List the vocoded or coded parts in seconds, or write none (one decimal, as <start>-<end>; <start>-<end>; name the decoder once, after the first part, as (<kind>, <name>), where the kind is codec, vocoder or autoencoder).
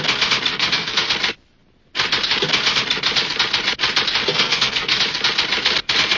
0.5-1.1 (codec, SNAC); 4.2-5.0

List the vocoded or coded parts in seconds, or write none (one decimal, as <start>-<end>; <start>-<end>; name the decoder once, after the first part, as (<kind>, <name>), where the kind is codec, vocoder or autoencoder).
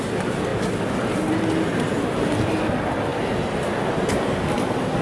none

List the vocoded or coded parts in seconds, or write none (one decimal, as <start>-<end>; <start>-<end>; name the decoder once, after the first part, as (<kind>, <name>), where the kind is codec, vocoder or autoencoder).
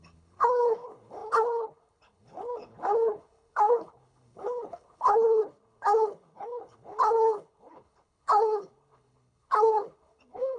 0.0-10.6 (codec, HILCodec)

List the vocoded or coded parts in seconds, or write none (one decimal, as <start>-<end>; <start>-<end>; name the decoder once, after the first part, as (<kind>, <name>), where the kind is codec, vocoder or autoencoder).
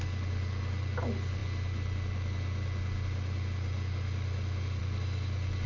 none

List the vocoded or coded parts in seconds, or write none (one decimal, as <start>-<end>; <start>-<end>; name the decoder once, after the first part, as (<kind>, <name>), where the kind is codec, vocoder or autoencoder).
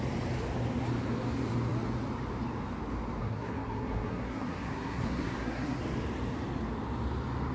3.2-5.8 (codec, SNAC)